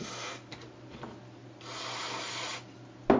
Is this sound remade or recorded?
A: recorded